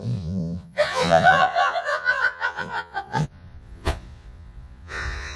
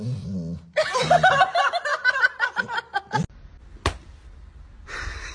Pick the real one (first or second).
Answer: second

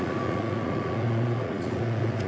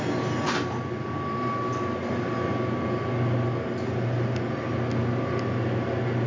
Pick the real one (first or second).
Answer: second